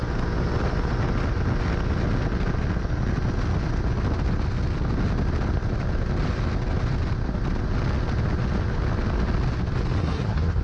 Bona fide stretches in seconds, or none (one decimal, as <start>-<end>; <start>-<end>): 0.0-10.0